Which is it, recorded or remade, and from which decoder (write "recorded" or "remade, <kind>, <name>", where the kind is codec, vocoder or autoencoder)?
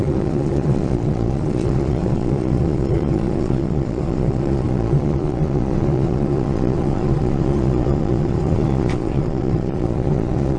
remade, vocoder, Vocos